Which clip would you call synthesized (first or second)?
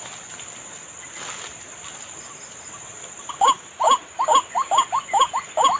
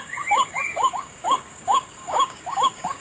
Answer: second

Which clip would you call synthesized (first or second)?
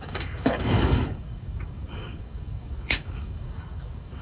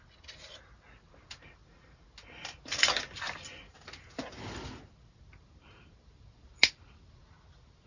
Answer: first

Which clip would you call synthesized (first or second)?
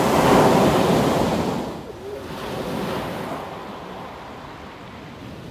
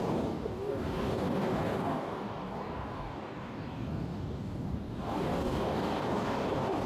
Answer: second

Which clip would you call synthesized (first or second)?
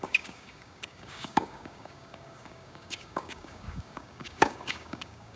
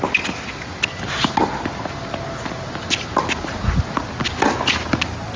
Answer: first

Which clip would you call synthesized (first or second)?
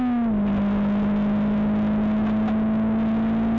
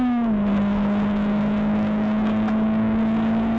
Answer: second